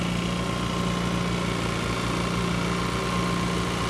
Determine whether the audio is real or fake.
real